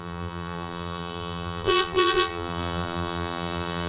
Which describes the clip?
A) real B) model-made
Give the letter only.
B